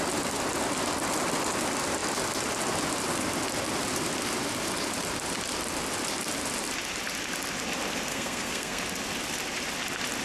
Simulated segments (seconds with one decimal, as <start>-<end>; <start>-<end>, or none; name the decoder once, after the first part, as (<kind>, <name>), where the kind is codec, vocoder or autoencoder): 8.1-8.8 (codec, SNAC)